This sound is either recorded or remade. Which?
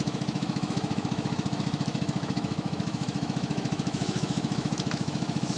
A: remade